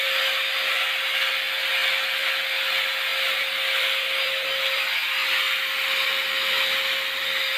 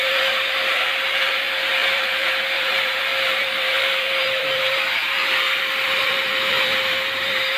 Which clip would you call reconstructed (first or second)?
second